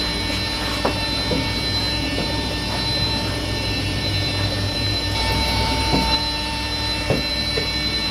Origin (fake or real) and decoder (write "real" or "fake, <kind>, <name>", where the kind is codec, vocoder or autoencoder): fake, vocoder, BigVGAN v2